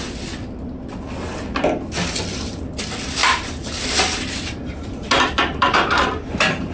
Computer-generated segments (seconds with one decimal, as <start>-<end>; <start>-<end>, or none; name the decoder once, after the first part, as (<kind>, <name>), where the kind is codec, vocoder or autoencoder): 3.2-6.7 (vocoder, BigVGAN v2)